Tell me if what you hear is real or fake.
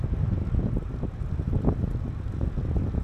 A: real